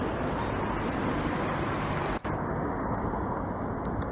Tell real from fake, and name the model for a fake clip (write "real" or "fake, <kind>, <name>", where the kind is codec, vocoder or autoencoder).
real